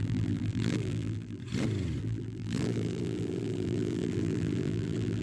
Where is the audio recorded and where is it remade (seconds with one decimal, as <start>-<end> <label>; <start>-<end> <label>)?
0.0-1.4 remade; 1.4-2.0 recorded; 2.0-5.2 remade